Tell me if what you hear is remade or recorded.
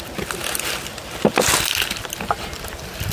recorded